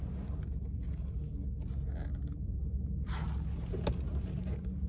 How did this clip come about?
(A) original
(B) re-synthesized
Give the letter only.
A